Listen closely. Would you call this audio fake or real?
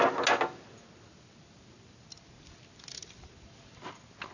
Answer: real